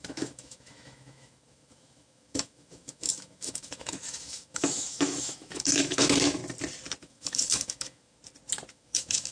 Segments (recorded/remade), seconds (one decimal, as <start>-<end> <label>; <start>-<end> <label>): 0.0-6.4 remade; 6.4-7.0 recorded; 7.0-8.2 remade; 8.2-8.7 recorded; 8.7-9.3 remade